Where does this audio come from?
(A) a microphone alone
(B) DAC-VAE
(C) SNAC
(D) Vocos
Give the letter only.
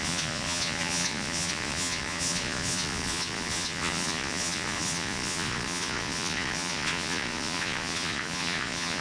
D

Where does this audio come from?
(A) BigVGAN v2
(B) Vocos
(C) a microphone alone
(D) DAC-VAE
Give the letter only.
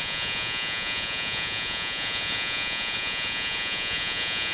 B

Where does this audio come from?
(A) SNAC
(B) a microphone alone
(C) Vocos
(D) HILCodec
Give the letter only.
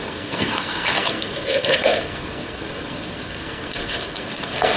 A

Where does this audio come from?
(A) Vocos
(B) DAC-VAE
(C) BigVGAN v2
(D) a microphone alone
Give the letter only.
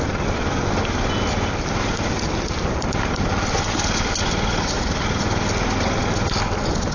D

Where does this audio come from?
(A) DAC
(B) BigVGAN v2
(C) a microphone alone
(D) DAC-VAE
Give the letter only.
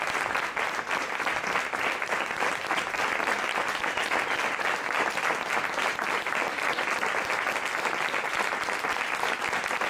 C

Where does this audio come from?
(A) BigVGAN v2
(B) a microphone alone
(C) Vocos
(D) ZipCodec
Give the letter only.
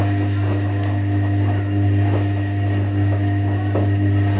B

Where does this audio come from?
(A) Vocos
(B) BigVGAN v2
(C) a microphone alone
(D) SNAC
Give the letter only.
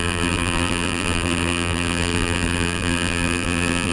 B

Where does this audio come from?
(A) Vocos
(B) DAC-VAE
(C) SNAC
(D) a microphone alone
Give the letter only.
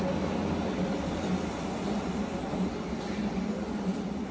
D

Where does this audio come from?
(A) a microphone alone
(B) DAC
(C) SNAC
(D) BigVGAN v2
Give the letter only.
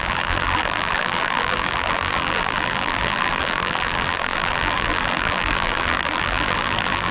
D